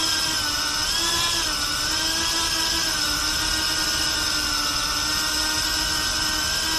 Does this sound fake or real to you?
real